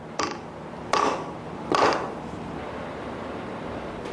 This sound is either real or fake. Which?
real